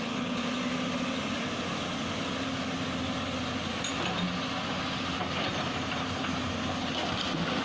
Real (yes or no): yes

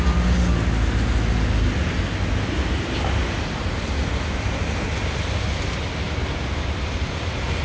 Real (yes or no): yes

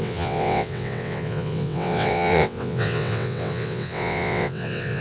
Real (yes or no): no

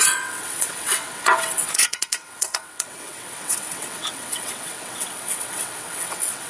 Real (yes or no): no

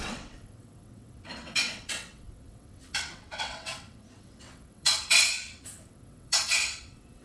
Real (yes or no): no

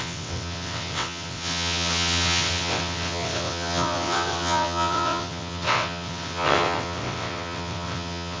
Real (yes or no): no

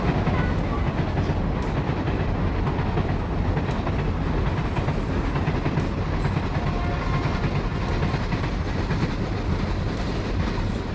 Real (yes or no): yes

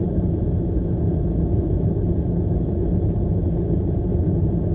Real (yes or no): yes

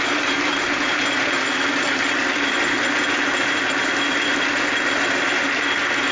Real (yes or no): yes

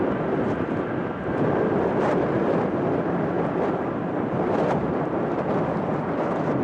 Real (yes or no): yes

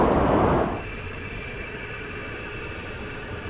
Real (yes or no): yes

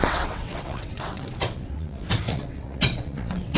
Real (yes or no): no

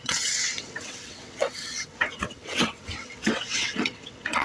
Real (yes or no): no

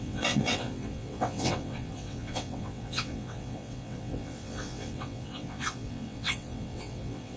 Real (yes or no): no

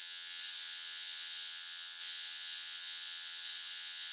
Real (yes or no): no